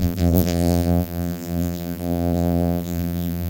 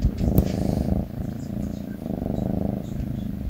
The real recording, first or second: second